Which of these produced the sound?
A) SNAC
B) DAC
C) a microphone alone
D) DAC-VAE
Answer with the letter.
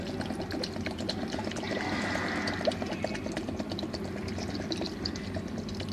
C